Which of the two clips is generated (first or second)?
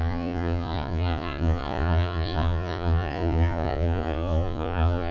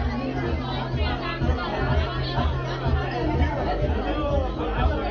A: first